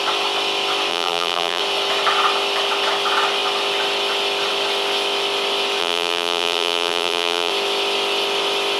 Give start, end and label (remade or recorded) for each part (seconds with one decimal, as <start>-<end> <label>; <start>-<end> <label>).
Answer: 0.0-0.9 recorded; 0.9-1.6 remade; 1.6-5.8 recorded; 5.8-7.5 remade; 7.5-8.8 recorded